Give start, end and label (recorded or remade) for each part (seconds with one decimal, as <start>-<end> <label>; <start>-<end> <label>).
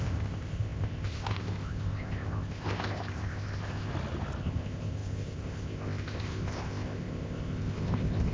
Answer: 0.0-3.9 remade; 3.9-4.4 recorded; 4.4-8.3 remade